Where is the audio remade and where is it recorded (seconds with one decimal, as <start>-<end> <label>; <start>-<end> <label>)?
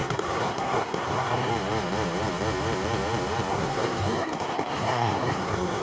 0.0-1.5 remade; 1.5-3.5 recorded; 3.5-5.8 remade